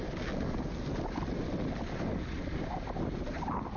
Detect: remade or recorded recorded